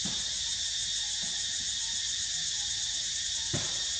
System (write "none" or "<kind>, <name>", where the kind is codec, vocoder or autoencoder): none